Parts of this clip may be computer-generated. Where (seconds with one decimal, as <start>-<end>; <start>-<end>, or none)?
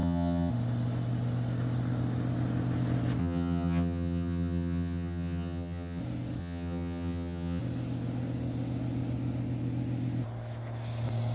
0.0-0.5; 3.2-6.0; 6.4-7.6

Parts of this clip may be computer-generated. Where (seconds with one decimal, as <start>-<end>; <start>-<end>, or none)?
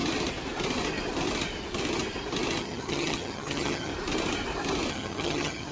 2.6-3.9; 4.9-5.7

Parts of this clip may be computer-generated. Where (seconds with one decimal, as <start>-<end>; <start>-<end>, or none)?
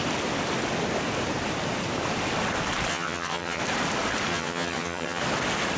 2.9-3.6; 4.3-5.2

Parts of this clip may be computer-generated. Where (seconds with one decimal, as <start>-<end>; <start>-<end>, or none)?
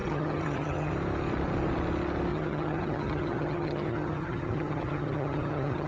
0.0-0.9; 2.3-5.9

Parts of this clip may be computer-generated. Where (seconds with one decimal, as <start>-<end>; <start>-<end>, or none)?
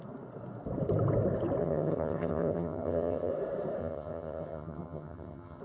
1.6-3.3; 3.8-5.6